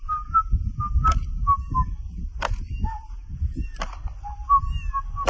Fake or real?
real